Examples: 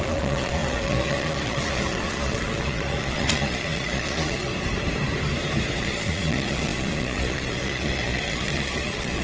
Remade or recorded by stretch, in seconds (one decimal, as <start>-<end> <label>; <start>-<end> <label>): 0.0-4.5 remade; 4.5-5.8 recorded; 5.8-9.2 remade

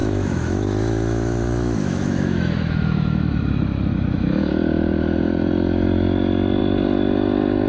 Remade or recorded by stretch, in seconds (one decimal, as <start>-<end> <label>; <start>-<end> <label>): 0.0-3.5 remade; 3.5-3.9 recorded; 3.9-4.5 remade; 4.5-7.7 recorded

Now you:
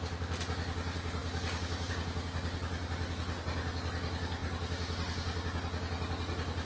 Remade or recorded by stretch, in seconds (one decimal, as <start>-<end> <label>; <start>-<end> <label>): 0.0-6.7 recorded